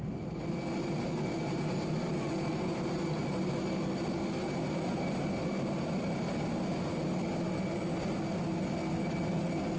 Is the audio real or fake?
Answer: real